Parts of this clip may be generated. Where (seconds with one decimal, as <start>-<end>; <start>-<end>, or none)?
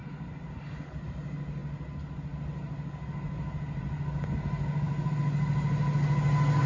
none